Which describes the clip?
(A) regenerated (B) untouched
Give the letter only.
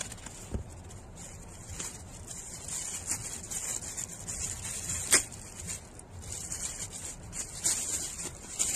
B